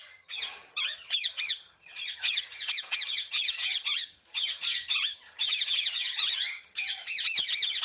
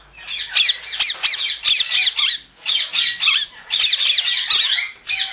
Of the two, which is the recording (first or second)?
second